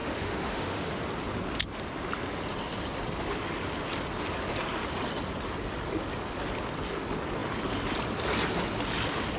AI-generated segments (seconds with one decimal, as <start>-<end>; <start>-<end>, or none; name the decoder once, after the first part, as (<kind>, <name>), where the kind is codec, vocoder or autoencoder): 0.0-0.9 (autoencoder, DAC-VAE)